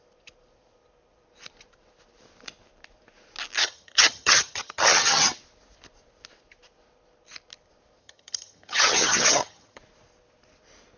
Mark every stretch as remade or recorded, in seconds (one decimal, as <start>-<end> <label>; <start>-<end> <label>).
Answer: 0.0-3.6 recorded; 3.6-5.4 remade; 5.4-8.0 recorded; 8.0-9.8 remade; 9.8-11.0 recorded